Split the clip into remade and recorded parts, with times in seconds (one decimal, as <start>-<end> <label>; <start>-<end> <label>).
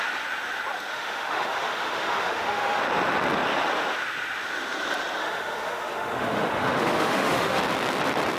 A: 0.0-0.9 recorded; 0.9-2.8 remade; 2.8-5.2 recorded; 5.2-7.6 remade; 7.6-8.4 recorded